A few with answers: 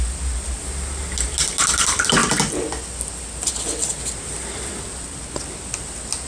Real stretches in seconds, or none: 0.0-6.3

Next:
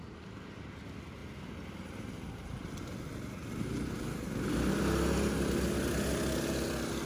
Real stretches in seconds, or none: 0.0-1.2; 4.5-7.1

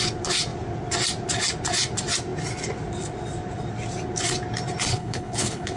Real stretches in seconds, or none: 0.0-4.9

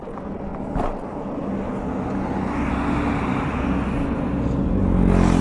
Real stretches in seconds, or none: 0.0-5.4